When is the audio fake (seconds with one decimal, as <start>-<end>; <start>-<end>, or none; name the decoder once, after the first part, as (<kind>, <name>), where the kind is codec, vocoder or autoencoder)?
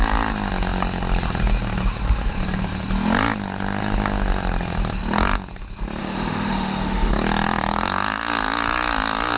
6.0-7.1 (autoencoder, DAC-VAE)